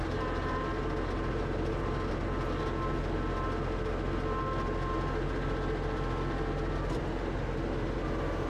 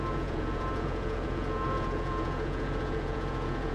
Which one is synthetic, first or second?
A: second